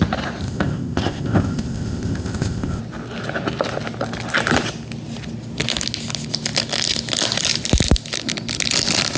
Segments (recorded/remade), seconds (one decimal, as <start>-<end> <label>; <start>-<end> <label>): 0.0-0.4 recorded; 0.4-2.8 remade; 2.8-9.2 recorded